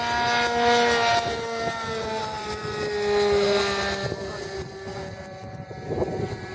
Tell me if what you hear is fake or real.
real